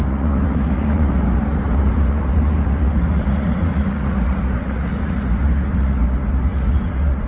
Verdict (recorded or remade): remade